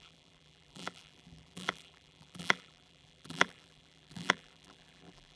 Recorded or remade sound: remade